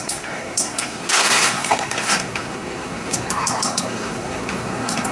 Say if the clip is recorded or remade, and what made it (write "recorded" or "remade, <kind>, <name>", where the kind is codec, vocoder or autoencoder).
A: remade, codec, SNAC